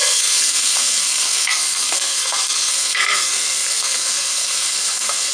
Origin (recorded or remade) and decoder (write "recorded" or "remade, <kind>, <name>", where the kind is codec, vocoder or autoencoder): remade, codec, SNAC